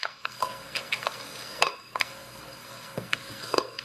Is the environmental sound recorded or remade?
remade